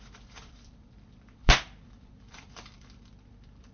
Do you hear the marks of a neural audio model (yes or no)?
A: yes